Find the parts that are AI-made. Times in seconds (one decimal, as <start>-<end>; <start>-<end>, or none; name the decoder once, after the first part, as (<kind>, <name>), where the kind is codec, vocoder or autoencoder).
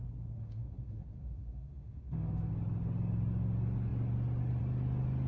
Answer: 0.0-2.5 (autoencoder, DAC-VAE)